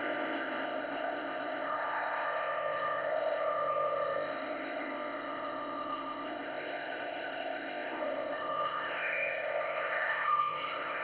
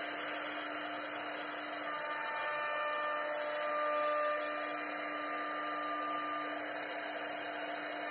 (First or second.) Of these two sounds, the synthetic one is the first